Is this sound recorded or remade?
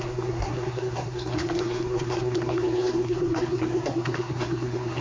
remade